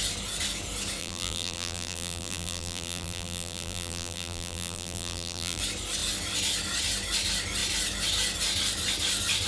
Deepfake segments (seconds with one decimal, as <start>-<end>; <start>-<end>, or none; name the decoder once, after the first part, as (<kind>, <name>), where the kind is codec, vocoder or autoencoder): 1.0-5.6 (vocoder, BigVGAN v2)